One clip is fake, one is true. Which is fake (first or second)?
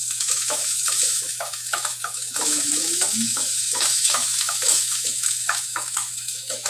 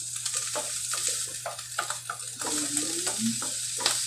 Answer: first